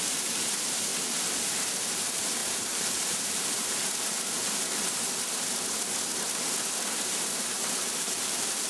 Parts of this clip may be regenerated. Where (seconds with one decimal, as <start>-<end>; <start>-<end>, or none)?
0.0-0.9; 1.5-3.8; 7.0-8.7